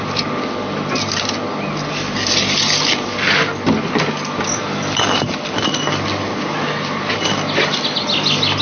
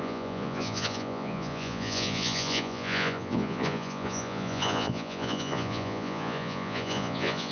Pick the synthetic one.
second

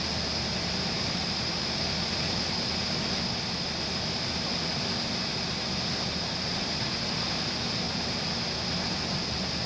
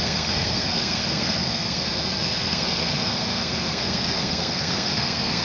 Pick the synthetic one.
second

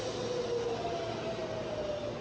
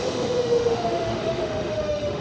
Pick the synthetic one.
second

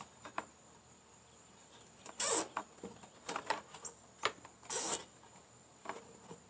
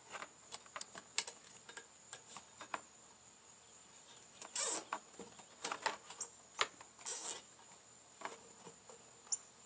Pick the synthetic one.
first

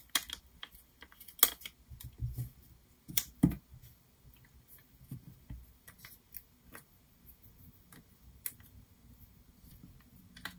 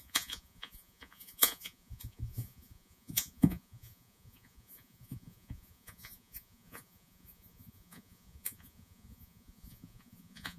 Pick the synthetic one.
second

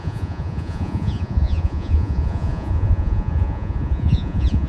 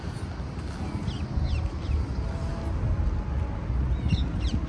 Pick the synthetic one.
first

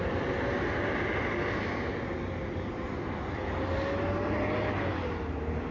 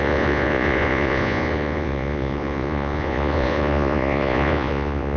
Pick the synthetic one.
second